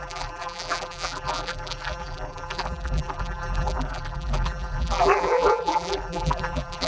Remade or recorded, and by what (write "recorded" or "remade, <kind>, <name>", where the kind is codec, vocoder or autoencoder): remade, vocoder, BigVGAN v2